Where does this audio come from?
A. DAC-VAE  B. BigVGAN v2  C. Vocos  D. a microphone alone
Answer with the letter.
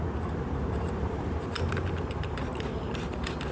B